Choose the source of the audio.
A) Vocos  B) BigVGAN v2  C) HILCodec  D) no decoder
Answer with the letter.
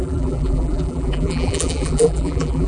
B